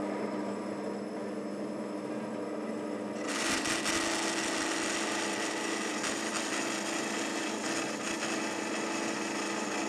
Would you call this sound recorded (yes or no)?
yes